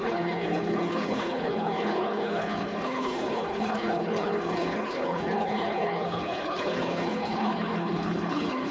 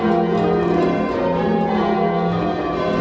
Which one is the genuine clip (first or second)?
second